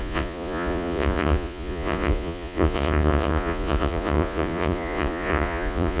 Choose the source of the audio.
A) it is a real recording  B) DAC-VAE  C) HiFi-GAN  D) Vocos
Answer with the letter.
D